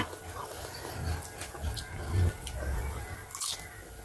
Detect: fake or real real